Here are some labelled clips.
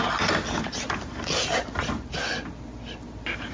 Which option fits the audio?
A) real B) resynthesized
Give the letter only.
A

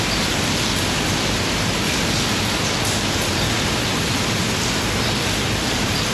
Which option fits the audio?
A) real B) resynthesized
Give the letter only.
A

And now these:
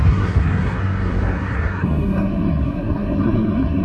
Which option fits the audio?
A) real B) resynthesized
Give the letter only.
B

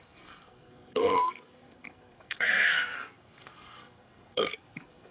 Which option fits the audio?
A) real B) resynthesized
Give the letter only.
B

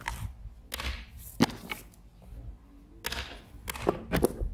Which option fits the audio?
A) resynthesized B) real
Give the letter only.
B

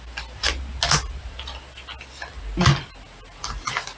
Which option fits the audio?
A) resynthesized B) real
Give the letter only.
B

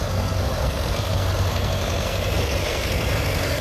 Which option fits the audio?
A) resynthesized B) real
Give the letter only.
A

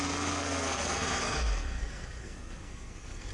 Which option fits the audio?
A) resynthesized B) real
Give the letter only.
A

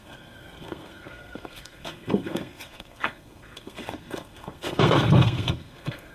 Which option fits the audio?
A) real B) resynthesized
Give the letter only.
B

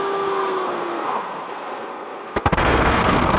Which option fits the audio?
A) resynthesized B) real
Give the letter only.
A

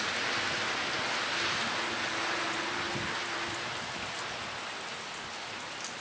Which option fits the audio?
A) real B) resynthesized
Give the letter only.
A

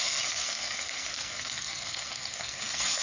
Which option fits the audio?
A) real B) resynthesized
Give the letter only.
B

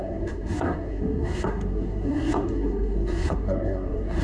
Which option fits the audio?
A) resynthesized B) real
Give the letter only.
A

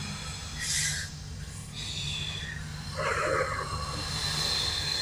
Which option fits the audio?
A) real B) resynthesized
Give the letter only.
A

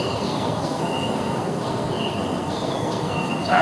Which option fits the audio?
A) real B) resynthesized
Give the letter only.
B